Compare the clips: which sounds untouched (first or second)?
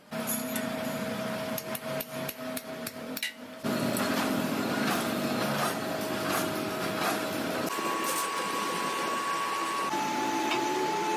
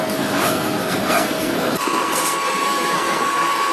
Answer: first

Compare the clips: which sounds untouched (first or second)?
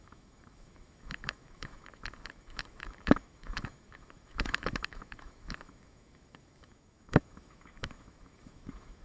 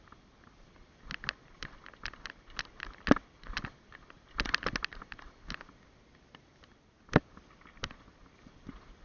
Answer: second